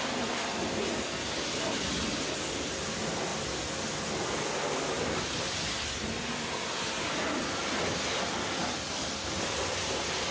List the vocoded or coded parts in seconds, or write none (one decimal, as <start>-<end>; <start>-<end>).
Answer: none